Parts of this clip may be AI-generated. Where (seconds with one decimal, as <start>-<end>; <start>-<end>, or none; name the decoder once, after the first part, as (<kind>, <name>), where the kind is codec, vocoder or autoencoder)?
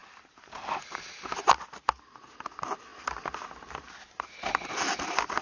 none